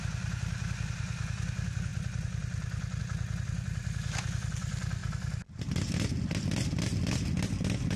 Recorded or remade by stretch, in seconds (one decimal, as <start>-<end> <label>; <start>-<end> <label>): 0.0-1.9 recorded; 1.9-3.0 remade; 3.0-5.0 recorded; 5.0-5.6 remade; 5.6-8.0 recorded